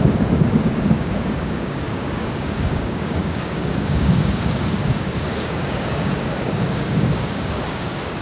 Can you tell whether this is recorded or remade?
remade